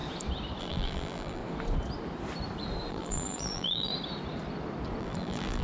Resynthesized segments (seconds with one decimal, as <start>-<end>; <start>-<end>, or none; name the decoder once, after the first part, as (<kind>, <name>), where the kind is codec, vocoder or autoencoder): 0.6-1.4 (vocoder, BigVGAN v2); 2.9-3.9; 5.0-5.6